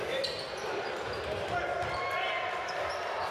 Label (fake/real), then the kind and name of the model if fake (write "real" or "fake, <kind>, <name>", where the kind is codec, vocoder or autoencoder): real